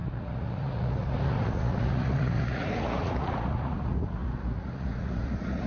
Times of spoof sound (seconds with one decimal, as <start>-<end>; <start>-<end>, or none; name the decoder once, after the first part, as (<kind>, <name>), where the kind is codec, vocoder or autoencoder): 0.0-5.7 (vocoder, Vocos)